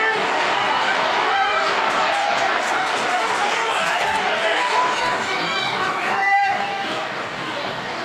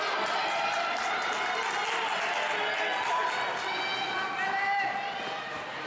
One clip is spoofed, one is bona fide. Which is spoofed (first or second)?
first